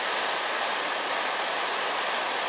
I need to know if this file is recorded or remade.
recorded